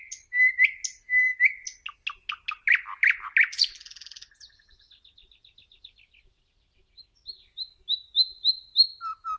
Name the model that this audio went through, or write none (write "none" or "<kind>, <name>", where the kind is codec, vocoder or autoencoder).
none